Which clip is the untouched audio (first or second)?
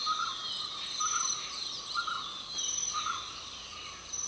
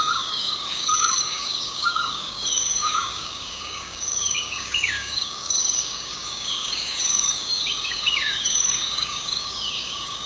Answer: first